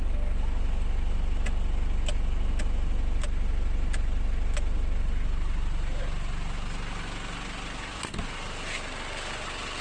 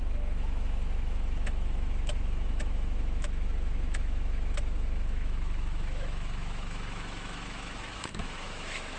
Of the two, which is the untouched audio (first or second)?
first